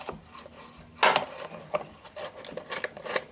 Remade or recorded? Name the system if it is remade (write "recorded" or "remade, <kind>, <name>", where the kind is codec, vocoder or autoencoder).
recorded